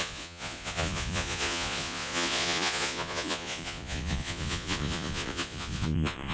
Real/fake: fake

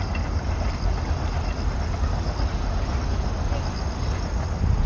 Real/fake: real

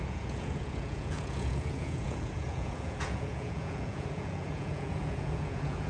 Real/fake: fake